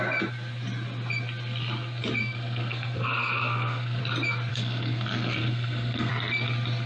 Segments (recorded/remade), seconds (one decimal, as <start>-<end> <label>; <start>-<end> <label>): 0.0-2.2 recorded; 2.2-4.0 remade; 4.0-4.5 recorded; 4.5-6.1 remade; 6.1-6.9 recorded